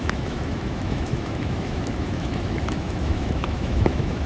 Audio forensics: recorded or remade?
remade